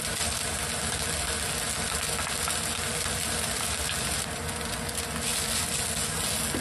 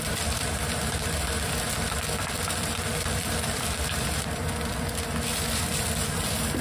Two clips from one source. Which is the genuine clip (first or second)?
first